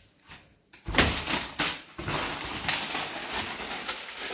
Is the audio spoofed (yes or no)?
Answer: no